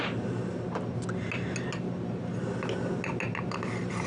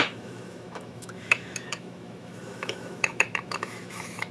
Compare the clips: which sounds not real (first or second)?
second